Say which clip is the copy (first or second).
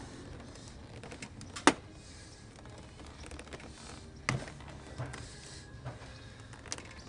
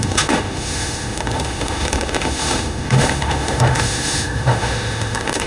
second